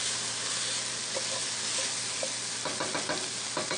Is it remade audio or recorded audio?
recorded